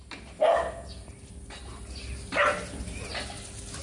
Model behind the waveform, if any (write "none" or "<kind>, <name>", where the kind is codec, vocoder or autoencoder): none